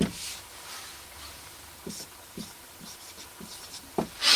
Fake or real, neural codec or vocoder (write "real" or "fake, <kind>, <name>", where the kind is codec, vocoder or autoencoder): fake, vocoder, BigVGAN v2